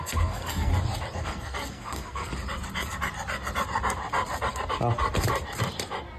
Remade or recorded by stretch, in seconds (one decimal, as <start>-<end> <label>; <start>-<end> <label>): 0.0-0.7 remade; 0.7-1.2 recorded; 1.2-2.3 remade; 2.3-6.2 recorded